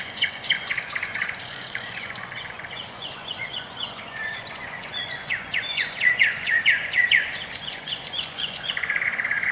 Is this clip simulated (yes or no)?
yes